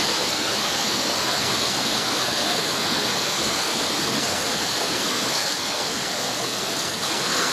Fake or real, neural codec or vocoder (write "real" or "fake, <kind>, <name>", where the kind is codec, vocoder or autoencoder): fake, codec, SNAC